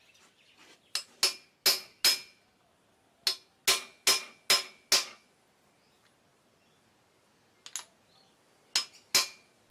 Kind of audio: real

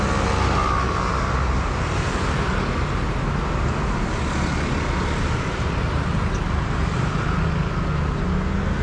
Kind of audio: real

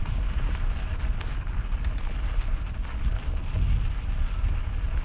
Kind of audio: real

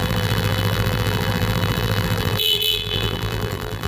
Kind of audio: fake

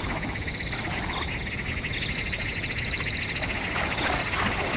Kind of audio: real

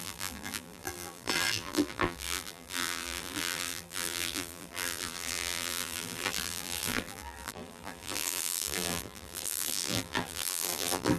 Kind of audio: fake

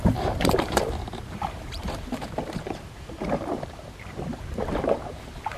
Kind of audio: fake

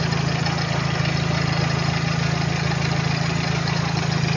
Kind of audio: real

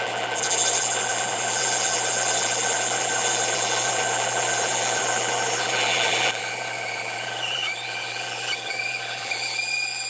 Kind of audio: fake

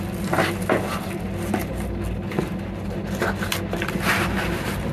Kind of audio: real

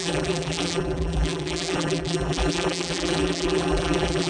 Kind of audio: fake